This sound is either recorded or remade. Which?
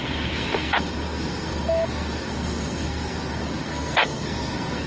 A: remade